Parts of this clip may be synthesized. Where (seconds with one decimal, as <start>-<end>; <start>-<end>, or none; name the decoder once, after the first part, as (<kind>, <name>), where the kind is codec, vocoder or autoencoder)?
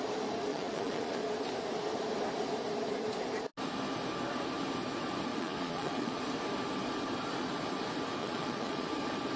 0.5-1.2 (vocoder, Vocos); 5.3-6.2; 8.2-8.9